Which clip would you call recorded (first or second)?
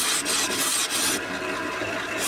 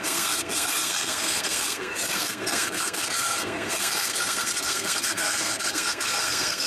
first